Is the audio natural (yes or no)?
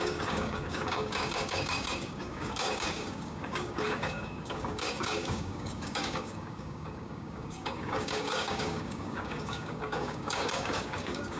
no